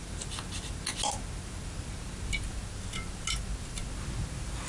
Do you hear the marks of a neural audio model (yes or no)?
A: no